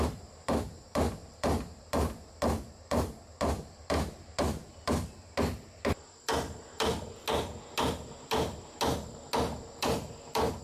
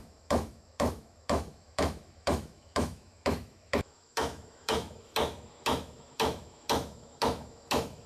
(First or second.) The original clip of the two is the first